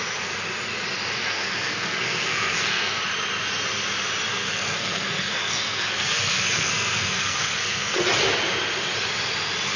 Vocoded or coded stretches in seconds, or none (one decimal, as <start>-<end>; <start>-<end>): 1.2-3.0; 4.3-8.0